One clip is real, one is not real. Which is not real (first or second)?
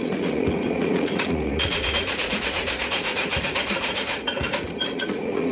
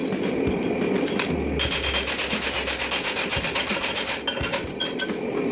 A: first